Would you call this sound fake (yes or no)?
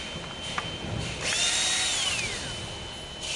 no